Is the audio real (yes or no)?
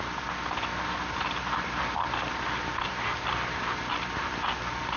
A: yes